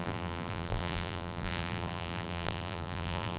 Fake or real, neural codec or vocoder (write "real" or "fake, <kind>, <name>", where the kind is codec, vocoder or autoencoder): fake, vocoder, BigVGAN v2